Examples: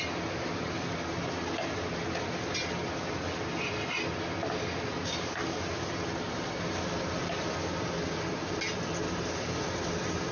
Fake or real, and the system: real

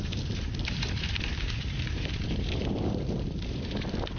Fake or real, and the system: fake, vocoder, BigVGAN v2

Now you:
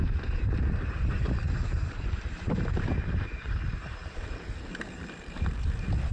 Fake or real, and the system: fake, vocoder, BigVGAN v2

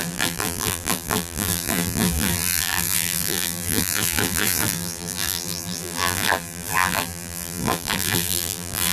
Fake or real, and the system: fake, vocoder, BigVGAN v2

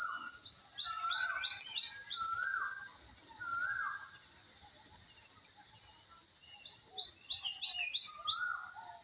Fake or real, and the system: real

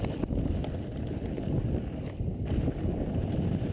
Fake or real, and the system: real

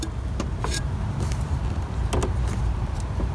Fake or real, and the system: real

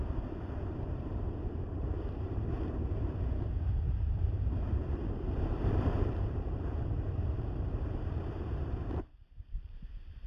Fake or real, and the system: fake, vocoder, BigVGAN v2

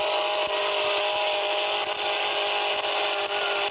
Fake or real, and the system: real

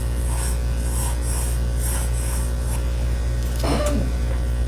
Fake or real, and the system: real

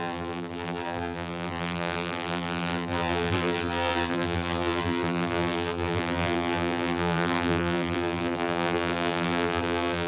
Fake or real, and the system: fake, vocoder, BigVGAN v2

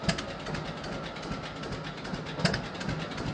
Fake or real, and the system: real